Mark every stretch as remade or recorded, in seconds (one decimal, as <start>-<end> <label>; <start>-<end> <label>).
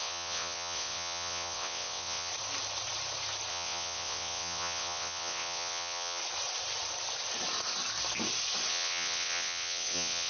0.0-2.3 remade; 2.3-3.5 recorded; 3.5-6.2 remade; 6.2-8.7 recorded; 8.7-10.3 remade